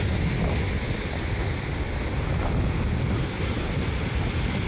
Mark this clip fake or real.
real